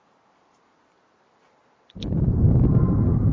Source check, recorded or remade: remade